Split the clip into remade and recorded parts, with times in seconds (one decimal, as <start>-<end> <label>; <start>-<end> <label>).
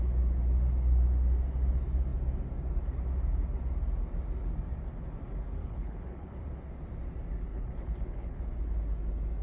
0.0-5.6 recorded; 5.6-6.4 remade; 6.4-7.5 recorded; 7.5-8.4 remade; 8.4-9.4 recorded